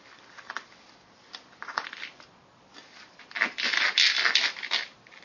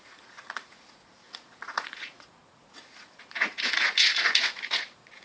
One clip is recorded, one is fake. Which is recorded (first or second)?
first